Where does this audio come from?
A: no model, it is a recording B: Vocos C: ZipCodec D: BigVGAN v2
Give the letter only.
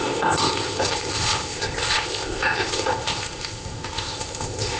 C